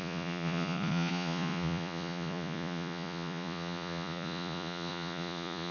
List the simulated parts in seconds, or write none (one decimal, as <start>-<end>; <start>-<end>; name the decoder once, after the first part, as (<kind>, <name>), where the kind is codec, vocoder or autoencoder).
0.0-5.7 (vocoder, Vocos)